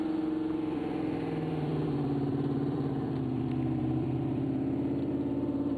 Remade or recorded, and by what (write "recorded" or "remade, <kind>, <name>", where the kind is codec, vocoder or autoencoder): remade, vocoder, BigVGAN v2